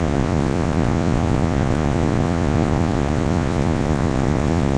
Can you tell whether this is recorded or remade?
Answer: remade